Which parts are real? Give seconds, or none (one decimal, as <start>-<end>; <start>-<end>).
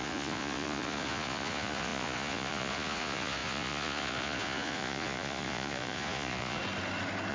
6.6-7.3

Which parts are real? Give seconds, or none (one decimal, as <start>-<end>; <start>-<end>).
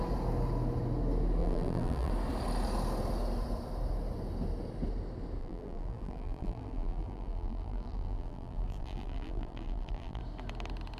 0.0-1.4; 2.1-5.4; 10.2-11.0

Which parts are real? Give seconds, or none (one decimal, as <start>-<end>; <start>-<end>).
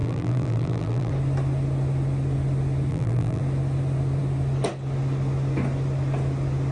1.1-2.9; 3.4-6.7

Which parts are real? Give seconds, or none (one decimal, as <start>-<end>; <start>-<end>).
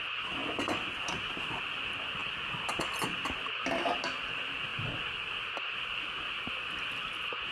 0.0-7.5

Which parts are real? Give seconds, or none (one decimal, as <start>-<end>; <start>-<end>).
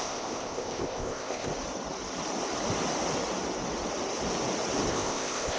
1.5-4.9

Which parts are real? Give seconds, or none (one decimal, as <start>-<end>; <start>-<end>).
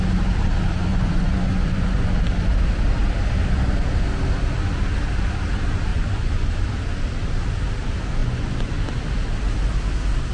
0.0-0.9; 2.1-5.9; 6.5-8.2; 8.7-10.3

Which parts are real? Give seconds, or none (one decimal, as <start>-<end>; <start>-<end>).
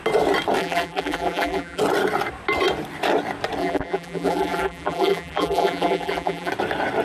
0.0-0.6; 1.8-3.6; 6.5-7.0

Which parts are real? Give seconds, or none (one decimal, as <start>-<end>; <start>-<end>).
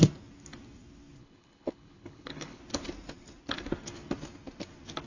0.0-1.2; 2.6-5.1